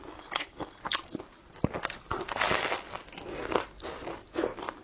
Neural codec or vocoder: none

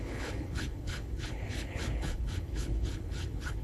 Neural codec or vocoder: codec, HILCodec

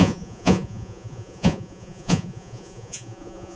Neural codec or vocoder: vocoder, Vocos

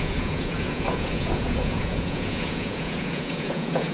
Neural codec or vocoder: vocoder, Vocos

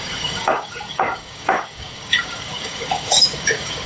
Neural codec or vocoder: codec, DAC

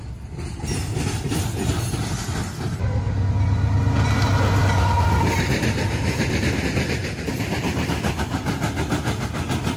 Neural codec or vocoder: none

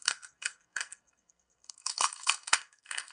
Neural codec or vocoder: codec, SNAC